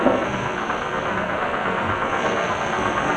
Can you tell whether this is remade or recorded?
remade